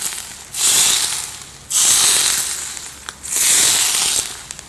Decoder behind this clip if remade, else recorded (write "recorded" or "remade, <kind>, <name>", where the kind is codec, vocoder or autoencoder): recorded